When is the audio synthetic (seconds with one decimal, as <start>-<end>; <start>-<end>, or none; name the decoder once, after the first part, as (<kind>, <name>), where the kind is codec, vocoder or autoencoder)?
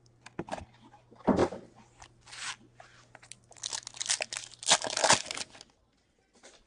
none